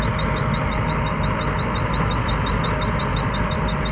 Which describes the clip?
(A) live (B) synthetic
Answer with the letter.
A